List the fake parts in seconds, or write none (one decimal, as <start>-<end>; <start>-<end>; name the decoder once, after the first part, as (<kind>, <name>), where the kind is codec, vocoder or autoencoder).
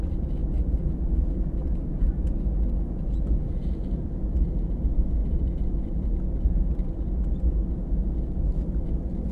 none